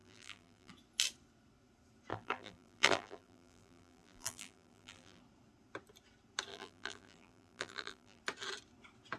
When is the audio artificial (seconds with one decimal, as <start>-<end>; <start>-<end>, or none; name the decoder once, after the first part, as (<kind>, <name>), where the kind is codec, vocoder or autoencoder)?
0.0-0.7 (vocoder, BigVGAN v2); 2.1-5.2; 6.5-8.2